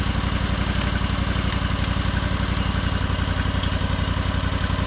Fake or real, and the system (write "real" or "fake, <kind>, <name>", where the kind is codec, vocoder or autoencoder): real